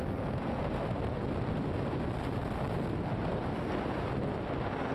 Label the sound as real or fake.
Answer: fake